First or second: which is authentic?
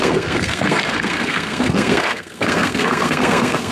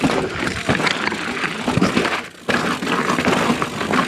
second